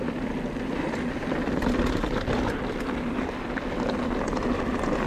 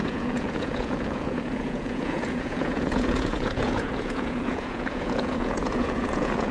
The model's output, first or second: second